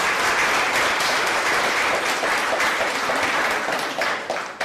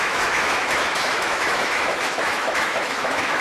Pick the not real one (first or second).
second